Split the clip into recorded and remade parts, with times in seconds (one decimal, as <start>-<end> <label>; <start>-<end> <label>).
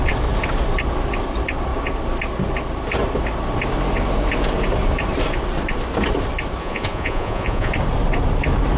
0.0-6.6 recorded; 6.6-7.7 remade; 7.7-8.8 recorded